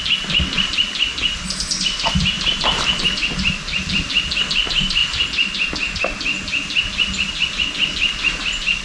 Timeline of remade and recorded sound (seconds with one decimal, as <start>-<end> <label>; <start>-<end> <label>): 0.0-8.8 recorded